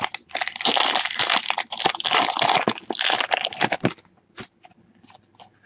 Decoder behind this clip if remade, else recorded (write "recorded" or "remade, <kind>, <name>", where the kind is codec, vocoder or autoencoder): recorded